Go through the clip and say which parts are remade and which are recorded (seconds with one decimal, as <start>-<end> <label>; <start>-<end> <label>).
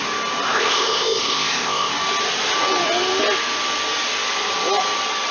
0.0-0.5 recorded; 0.5-1.9 remade; 1.9-5.3 recorded